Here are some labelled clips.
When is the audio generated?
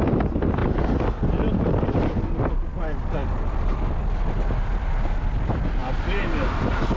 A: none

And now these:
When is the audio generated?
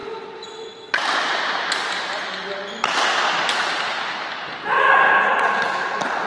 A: none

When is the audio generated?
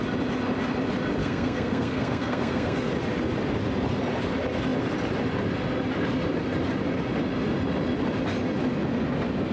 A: 1.2-2.9 (codec, SNAC)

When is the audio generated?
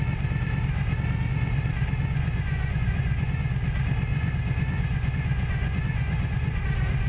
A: 2.0-3.5 (vocoder, Vocos); 4.1-6.6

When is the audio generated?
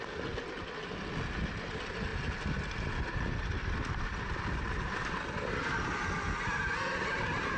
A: none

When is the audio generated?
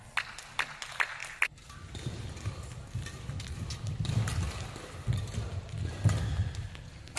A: none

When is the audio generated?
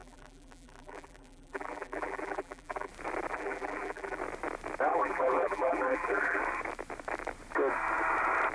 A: 0.0-2.9 (vocoder, BigVGAN v2); 3.3-4.2; 4.9-6.4